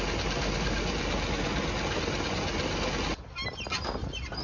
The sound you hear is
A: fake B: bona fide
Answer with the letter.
B